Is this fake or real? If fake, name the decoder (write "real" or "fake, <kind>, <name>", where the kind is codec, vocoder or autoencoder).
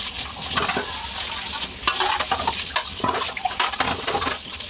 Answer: real